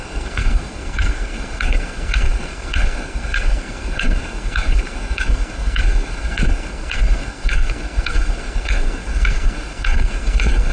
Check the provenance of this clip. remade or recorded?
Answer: remade